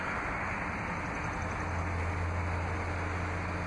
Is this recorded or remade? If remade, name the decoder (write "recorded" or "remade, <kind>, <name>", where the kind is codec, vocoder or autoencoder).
recorded